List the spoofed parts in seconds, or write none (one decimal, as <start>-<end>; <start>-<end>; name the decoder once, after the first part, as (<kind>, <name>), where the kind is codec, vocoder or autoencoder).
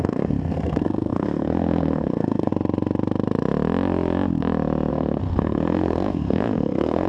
0.0-2.5 (codec, SNAC); 4.9-7.1